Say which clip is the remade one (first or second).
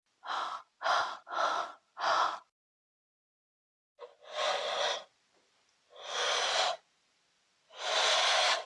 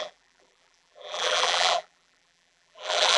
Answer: second